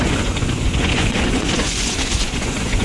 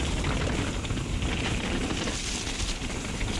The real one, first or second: second